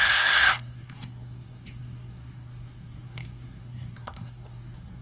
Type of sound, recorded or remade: remade